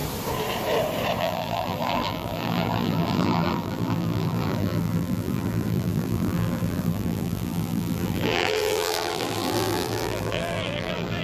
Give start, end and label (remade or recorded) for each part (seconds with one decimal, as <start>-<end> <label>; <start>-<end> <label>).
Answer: 0.0-1.2 recorded; 1.2-11.2 remade